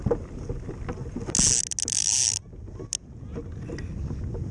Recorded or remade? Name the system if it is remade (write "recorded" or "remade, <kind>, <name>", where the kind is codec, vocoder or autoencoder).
recorded